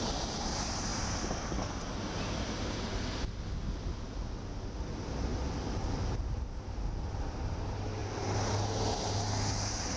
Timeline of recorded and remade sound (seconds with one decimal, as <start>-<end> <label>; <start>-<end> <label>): 0.0-10.0 recorded